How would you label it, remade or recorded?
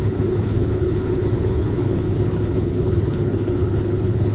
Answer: remade